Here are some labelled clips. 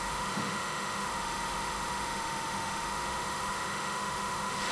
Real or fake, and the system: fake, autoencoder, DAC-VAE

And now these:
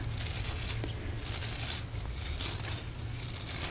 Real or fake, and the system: real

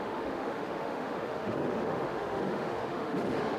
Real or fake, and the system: fake, autoencoder, DAC-VAE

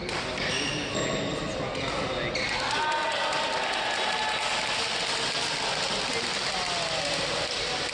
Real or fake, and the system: real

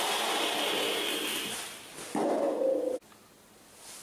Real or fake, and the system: real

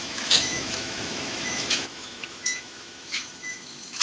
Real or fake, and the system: fake, autoencoder, DAC-VAE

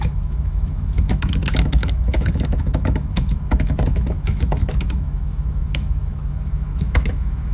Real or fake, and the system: fake, autoencoder, DAC-VAE